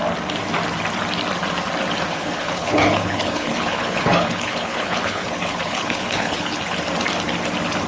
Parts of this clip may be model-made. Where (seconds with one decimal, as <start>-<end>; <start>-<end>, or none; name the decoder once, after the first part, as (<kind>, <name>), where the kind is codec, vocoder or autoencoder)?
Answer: 2.1-6.8 (codec, HILCodec)